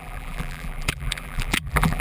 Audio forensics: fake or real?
fake